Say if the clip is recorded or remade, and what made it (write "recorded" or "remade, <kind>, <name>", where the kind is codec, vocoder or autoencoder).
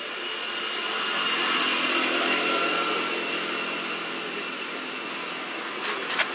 recorded